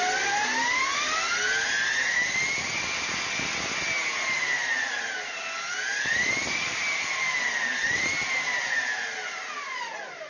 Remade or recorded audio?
recorded